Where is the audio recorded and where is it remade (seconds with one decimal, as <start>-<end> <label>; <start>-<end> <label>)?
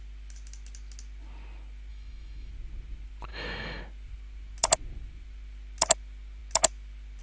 0.0-1.9 recorded; 1.9-2.5 remade; 2.5-3.3 recorded; 3.3-3.8 remade; 3.8-7.2 recorded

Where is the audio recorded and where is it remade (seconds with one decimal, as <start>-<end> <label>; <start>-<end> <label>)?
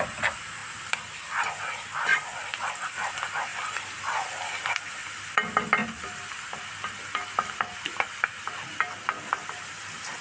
0.0-10.2 recorded